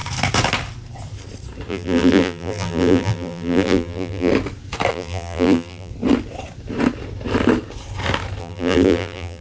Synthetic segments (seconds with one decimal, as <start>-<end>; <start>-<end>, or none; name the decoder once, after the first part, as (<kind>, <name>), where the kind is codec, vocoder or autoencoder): 1.7-4.3 (vocoder, BigVGAN v2); 4.9-5.9; 8.4-9.4